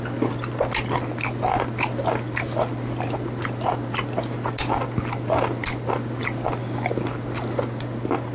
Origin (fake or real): real